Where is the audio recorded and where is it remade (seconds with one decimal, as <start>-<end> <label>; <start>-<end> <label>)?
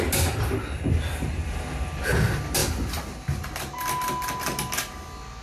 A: 0.0-5.4 recorded